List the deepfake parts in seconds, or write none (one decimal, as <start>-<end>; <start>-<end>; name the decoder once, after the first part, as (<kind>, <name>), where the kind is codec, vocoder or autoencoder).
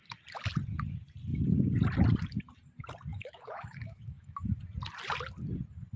3.1-4.6 (autoencoder, DAC-VAE)